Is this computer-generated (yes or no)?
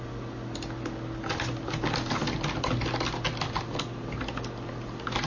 no